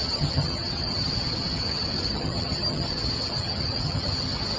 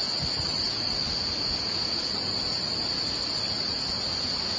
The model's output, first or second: first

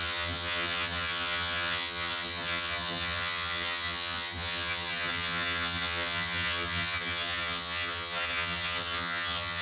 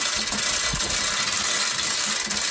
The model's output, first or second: first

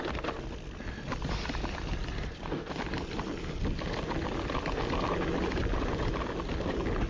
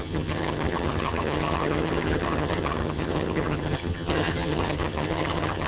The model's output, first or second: second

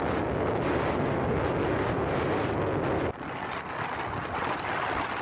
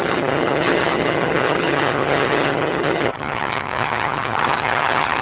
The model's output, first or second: second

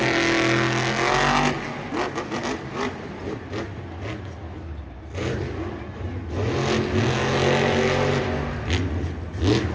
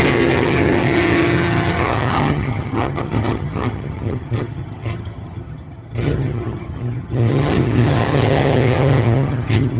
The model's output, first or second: second